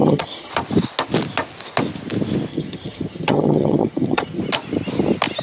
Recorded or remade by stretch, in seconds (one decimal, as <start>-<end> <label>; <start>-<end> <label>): 0.0-0.5 remade; 0.5-2.5 recorded; 2.5-4.4 remade; 4.4-5.4 recorded